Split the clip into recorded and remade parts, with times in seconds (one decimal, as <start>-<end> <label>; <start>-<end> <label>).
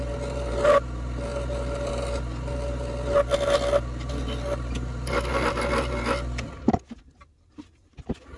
0.0-8.4 recorded